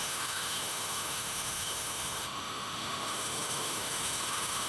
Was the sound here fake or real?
fake